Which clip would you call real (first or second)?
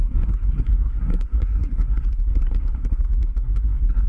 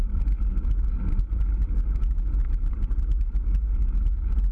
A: second